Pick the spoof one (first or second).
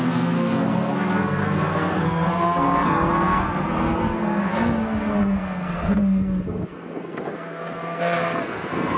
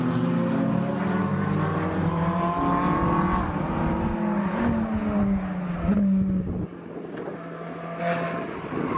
first